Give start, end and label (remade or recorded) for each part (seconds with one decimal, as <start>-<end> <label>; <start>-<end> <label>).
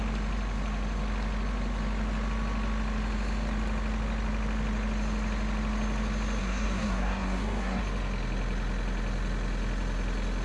0.0-6.4 recorded; 6.4-7.8 remade; 7.8-10.4 recorded